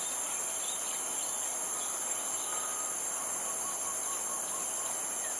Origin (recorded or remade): recorded